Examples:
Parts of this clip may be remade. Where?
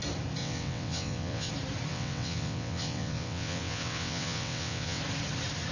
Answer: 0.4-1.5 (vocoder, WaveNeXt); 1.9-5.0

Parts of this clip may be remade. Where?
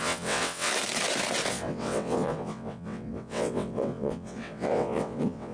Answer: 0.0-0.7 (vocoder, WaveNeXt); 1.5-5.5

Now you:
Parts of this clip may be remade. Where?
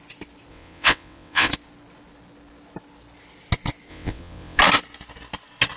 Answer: 0.5-1.5 (vocoder, WaveNeXt); 3.9-4.6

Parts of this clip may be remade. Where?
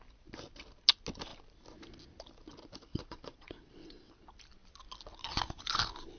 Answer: 2.9-4.1 (vocoder, WaveNeXt)